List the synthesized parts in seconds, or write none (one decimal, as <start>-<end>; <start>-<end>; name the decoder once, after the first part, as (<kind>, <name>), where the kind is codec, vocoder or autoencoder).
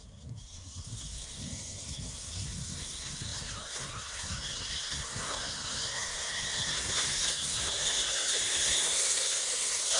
0.0-10.0 (codec, SNAC)